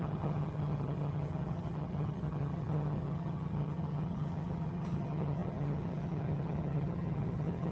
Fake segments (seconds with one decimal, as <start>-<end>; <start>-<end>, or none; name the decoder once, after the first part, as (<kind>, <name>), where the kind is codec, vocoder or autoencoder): 0.0-7.7 (vocoder, HiFi-GAN)